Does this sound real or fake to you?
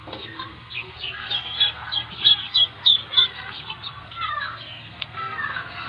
fake